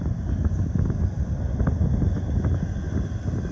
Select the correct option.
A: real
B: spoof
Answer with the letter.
A